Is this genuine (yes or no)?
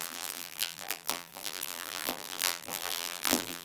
no